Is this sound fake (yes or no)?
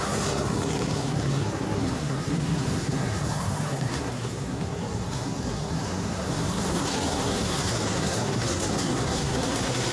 yes